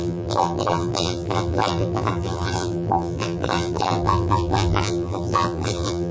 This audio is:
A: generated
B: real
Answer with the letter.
A